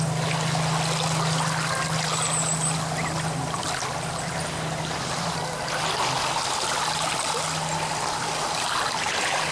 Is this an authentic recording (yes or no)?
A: yes